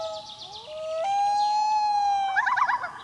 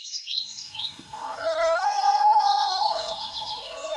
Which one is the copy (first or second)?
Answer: second